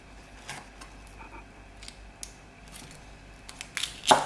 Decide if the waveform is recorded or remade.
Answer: recorded